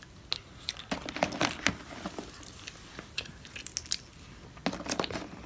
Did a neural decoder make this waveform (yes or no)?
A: no